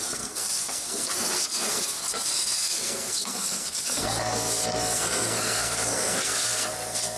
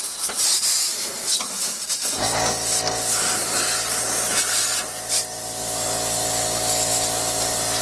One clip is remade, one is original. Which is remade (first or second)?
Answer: first